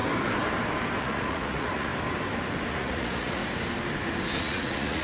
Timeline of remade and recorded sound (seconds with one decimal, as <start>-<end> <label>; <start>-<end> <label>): 0.0-1.0 recorded; 1.0-1.9 remade; 1.9-2.7 recorded; 2.7-3.4 remade; 3.4-4.4 recorded; 4.4-5.0 remade